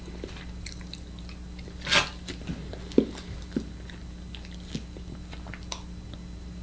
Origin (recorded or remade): recorded